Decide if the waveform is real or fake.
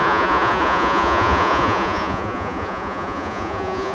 fake